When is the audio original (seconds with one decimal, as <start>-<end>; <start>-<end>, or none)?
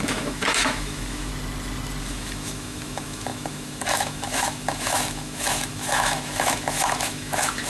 1.3-2.0